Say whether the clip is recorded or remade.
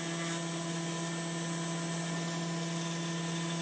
recorded